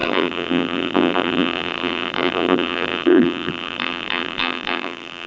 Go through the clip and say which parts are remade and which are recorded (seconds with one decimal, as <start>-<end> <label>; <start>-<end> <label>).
0.0-5.3 remade

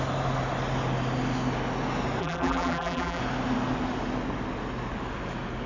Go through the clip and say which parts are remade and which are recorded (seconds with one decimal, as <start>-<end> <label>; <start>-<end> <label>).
0.0-2.2 recorded; 2.2-3.2 remade; 3.2-5.7 recorded

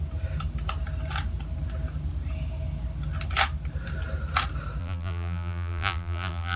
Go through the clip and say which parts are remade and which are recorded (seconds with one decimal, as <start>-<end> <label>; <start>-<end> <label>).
0.0-4.8 recorded; 4.8-6.6 remade

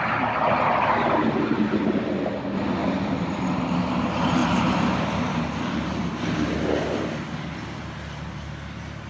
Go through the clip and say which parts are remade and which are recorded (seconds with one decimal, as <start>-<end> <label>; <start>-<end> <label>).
0.0-2.8 recorded; 2.8-3.6 remade; 3.6-4.4 recorded; 4.4-5.4 remade; 5.4-9.1 recorded

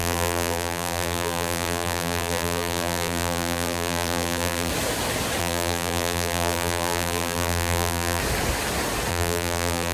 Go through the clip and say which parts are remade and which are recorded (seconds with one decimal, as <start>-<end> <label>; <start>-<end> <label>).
0.0-4.7 remade; 4.7-5.4 recorded; 5.4-8.2 remade; 8.2-9.1 recorded; 9.1-9.9 remade